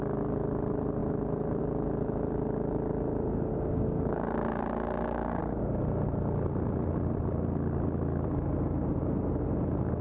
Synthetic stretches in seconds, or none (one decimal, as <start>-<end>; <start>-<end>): 3.5-5.4